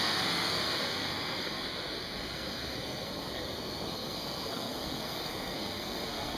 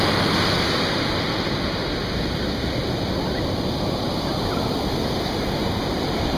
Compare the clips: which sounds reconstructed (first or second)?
first